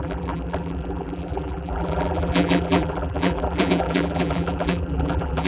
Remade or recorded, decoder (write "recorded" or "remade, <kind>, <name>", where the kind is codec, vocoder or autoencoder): remade, vocoder, BigVGAN v2